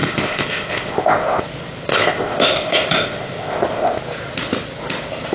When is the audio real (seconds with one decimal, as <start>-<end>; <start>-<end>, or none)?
1.4-1.9; 4.0-5.3